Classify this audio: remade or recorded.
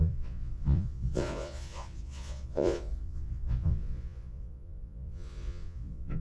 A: remade